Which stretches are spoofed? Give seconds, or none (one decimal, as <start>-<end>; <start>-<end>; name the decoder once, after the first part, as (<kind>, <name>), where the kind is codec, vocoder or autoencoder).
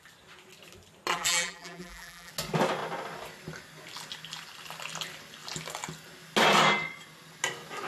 1.1-2.3 (vocoder, BigVGAN v2)